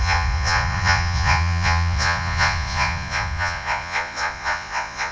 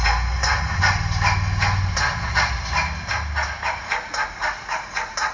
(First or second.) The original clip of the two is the second